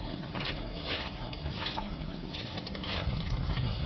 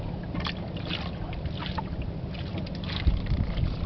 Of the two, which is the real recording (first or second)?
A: second